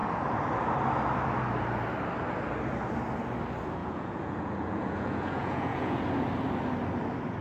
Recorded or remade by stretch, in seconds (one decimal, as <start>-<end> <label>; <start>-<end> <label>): 0.0-3.8 recorded; 3.8-6.0 remade; 6.0-7.4 recorded